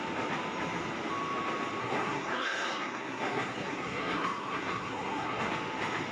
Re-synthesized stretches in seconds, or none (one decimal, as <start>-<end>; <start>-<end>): 1.8-5.5

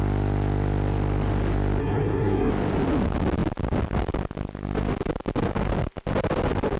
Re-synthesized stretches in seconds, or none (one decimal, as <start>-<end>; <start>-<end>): 1.8-2.5

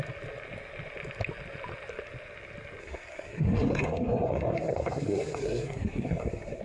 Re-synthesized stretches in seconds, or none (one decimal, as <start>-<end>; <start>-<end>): 2.8-6.6

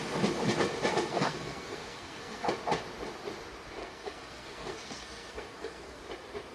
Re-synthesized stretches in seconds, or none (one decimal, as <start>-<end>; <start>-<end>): 0.9-2.5; 3.8-6.0

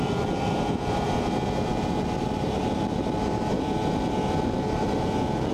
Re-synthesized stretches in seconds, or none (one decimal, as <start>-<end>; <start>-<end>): none

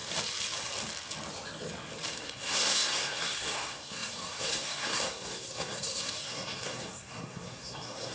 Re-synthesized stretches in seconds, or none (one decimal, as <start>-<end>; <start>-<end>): 2.1-8.1